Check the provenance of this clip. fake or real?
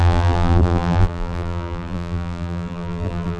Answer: fake